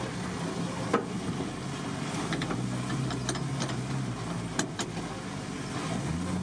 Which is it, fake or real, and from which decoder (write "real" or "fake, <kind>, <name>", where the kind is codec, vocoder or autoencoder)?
real